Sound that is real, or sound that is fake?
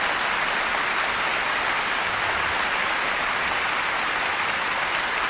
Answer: real